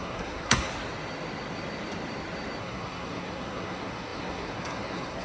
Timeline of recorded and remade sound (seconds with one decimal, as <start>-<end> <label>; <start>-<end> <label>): 0.0-0.7 remade; 0.7-2.6 recorded; 2.6-5.2 remade